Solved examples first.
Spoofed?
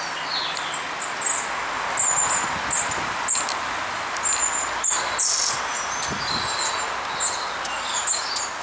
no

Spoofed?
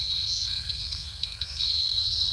yes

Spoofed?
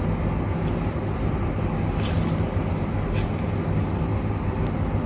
no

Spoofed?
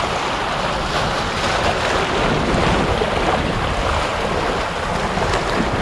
no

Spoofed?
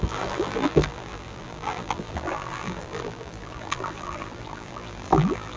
yes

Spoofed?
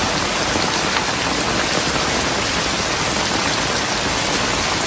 no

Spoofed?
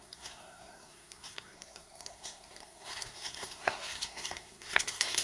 yes